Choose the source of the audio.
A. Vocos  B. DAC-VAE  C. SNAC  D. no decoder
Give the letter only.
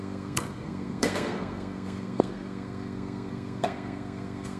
C